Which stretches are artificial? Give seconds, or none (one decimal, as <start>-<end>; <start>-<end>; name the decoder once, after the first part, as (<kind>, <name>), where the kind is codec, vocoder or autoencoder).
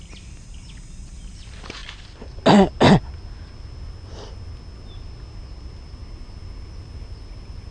none